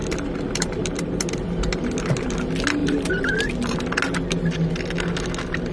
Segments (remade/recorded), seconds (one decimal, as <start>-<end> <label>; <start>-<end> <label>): 0.0-1.3 remade; 1.3-2.8 recorded; 2.8-3.5 remade; 3.5-5.7 recorded